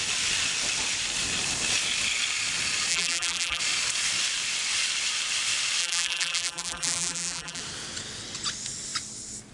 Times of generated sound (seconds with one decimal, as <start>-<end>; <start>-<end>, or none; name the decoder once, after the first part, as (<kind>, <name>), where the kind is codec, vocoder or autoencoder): 2.9-3.6 (vocoder, BigVGAN v2); 5.8-7.6

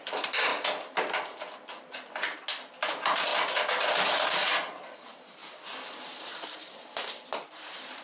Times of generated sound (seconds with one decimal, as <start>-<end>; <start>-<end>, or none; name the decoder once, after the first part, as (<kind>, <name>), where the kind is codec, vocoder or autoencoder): 0.0-0.5 (vocoder, BigVGAN v2); 2.6-3.3; 4.1-5.4; 6.1-8.0

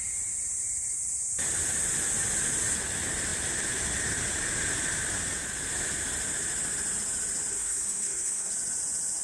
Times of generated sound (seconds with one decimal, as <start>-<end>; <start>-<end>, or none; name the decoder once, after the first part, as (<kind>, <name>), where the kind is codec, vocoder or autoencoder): 7.5-8.5 (codec, SNAC)

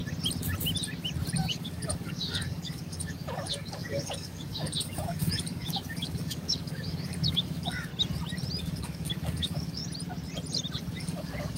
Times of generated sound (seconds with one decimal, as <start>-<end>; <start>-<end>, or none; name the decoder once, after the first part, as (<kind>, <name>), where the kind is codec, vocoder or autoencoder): 1.5-7.9 (codec, DAC); 8.6-9.8; 10.8-11.6